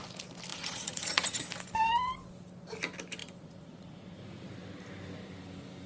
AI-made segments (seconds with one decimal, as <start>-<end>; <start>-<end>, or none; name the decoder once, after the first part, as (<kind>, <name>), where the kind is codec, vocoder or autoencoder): 0.5-1.4 (vocoder, Vocos); 3.2-4.5